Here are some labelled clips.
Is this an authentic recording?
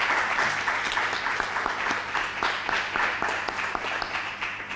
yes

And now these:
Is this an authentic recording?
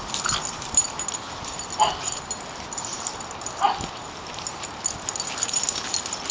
yes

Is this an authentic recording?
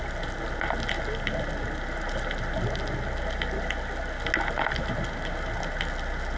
yes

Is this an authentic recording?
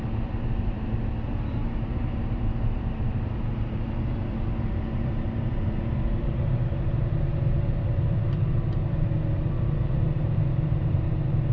no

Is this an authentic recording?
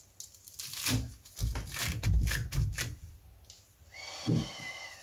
yes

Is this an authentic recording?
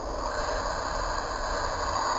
yes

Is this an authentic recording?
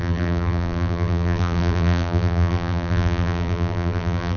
no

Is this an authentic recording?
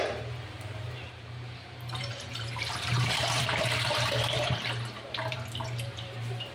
no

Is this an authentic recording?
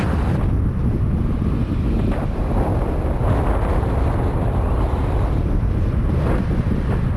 no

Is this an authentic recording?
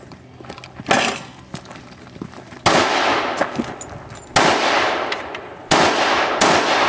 yes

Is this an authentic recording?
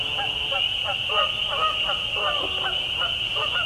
yes